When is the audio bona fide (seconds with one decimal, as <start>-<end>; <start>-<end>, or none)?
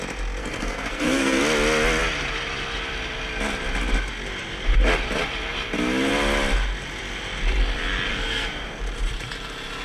0.0-0.4; 1.4-8.1; 8.8-9.8